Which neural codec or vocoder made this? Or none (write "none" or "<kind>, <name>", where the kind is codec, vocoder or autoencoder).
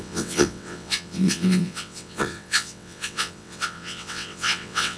vocoder, WaveNeXt